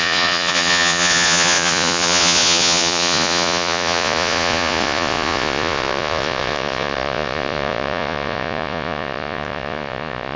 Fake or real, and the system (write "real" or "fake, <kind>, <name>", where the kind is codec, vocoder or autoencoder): fake, vocoder, Vocos